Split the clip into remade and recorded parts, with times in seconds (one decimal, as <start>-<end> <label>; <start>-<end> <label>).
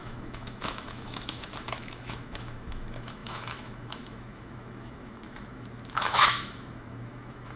0.0-7.6 remade